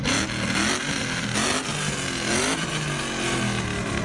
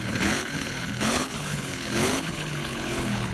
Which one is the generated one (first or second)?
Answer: second